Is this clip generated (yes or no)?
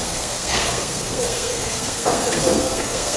yes